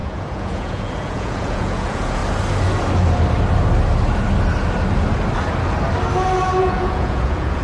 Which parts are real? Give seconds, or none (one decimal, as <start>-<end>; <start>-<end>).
2.2-6.6